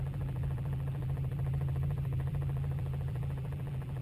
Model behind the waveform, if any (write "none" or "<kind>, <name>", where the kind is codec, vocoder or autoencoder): vocoder, BigVGAN v2